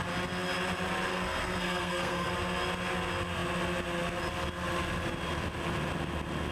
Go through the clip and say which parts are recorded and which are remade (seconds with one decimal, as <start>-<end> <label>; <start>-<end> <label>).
0.0-1.1 recorded; 1.1-2.3 remade; 2.3-6.5 recorded